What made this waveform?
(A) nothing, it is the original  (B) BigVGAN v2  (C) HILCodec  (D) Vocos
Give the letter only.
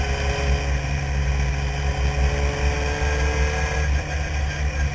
A